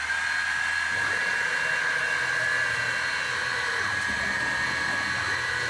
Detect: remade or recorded recorded